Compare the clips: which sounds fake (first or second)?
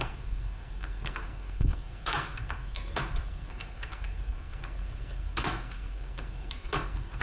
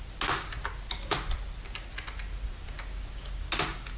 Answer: first